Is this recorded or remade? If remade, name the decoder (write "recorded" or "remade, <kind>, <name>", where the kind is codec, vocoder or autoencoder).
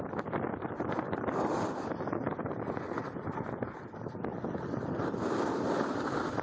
recorded